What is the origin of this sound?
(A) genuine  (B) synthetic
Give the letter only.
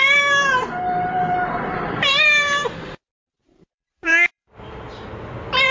B